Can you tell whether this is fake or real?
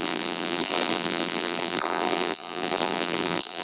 fake